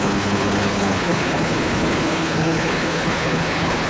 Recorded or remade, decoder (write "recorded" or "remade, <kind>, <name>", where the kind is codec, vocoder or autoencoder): remade, codec, HILCodec